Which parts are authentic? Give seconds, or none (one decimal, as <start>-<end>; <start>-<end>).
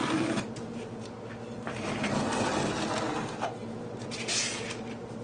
0.0-5.2